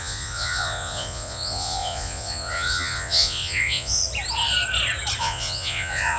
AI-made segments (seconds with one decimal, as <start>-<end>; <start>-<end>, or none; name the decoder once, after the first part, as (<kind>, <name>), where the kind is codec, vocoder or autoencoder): 0.0-4.0 (vocoder, Vocos); 5.2-6.2